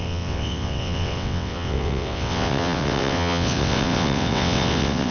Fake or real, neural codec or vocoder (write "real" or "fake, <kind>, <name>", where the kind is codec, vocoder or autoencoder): fake, vocoder, WaveNeXt